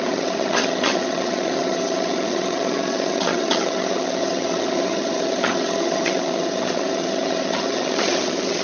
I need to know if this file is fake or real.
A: fake